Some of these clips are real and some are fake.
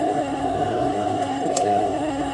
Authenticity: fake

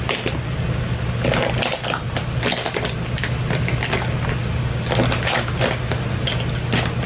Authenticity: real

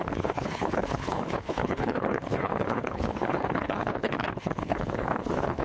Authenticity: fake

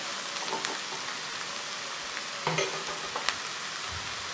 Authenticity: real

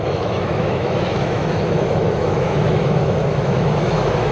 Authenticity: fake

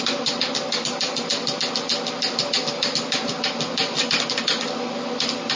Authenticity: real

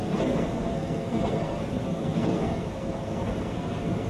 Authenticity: fake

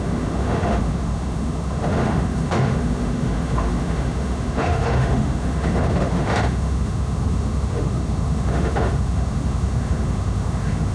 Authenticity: fake